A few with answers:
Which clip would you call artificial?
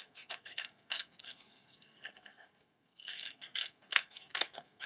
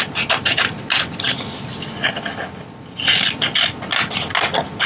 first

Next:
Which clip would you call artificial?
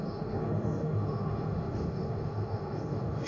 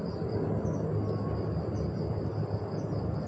first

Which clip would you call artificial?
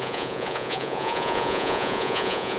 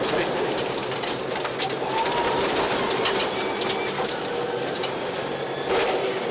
first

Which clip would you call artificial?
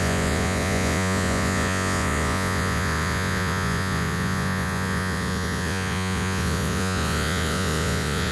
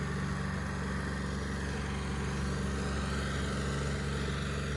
first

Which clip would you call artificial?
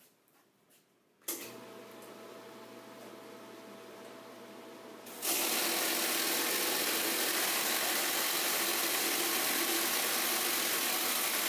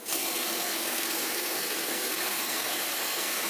second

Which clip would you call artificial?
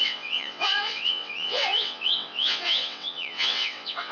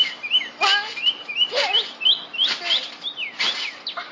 first